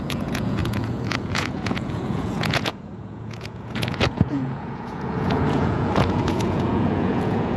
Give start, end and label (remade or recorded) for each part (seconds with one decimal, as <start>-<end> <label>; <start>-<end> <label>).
0.0-7.6 remade